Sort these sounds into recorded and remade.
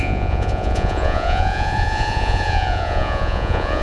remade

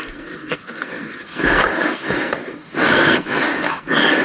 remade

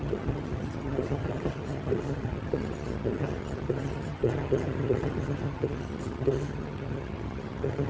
remade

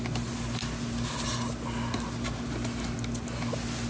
recorded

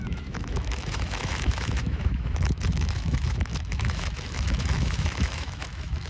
remade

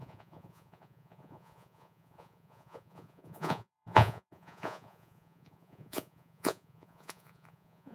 remade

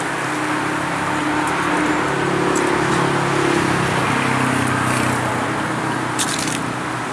recorded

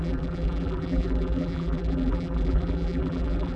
remade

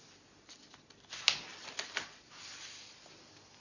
recorded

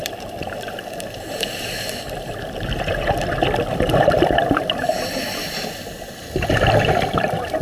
remade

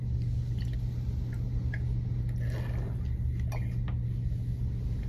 recorded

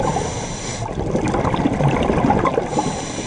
recorded